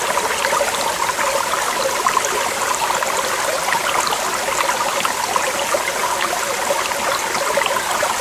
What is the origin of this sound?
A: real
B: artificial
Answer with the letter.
A